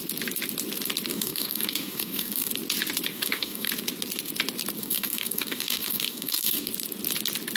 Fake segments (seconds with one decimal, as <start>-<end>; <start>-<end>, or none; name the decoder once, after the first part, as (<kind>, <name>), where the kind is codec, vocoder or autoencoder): 1.1-2.5 (codec, DAC); 3.1-3.7; 4.8-6.7